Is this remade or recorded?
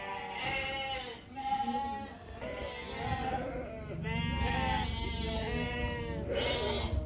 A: recorded